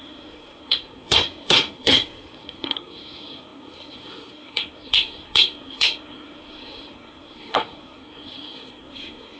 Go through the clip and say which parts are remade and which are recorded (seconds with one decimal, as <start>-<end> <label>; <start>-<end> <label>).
0.0-9.4 remade